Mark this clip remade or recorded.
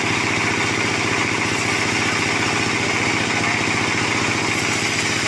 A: recorded